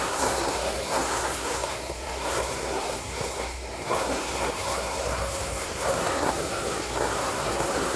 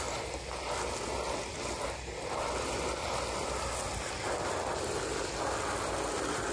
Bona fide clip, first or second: second